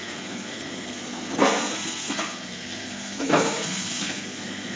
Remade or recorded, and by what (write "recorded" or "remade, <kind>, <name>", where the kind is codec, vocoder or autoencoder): remade, codec, SNAC